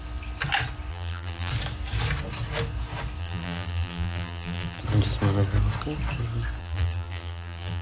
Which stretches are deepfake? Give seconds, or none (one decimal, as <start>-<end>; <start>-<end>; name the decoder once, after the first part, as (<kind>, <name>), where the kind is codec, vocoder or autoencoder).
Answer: 0.9-1.5 (vocoder, BigVGAN v2); 3.2-4.8; 6.6-7.8